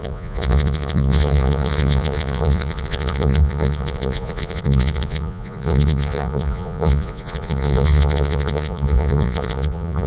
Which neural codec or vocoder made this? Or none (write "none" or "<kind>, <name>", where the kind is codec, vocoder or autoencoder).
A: vocoder, Vocos